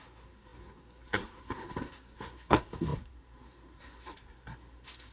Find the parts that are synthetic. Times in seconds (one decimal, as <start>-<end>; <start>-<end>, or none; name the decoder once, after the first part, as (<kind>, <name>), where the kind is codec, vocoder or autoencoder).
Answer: 0.0-5.1 (codec, SNAC)